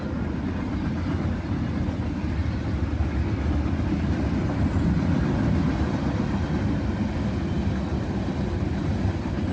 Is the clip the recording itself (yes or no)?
yes